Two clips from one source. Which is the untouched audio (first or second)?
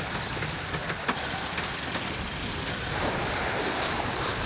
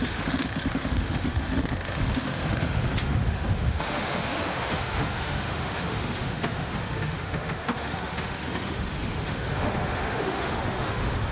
first